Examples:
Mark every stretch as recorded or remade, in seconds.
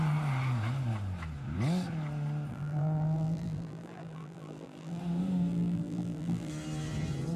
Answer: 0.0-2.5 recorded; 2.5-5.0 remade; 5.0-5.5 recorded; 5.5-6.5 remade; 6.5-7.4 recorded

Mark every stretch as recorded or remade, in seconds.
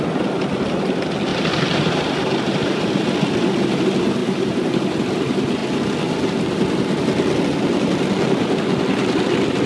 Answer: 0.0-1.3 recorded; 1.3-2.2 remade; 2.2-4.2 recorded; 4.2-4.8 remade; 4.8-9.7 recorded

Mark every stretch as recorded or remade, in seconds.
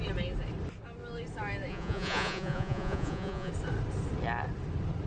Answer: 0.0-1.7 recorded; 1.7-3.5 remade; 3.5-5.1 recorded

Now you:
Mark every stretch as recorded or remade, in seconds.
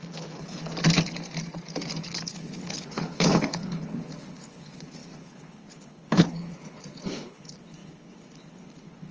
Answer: 0.0-0.7 remade; 0.7-2.0 recorded; 2.0-9.1 remade